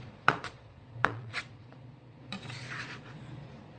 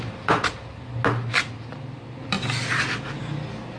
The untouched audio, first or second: second